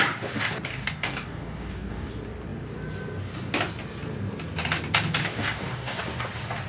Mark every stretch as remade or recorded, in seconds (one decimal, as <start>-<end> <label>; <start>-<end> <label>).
0.0-0.7 recorded; 0.7-2.1 remade; 2.1-5.2 recorded; 5.2-6.0 remade; 6.0-6.7 recorded